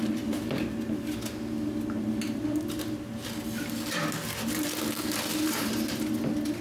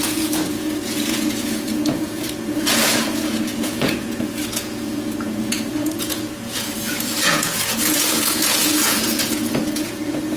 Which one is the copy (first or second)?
second